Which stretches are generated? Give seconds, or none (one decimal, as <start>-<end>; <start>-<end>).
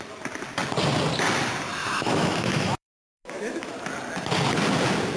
1.8-3.7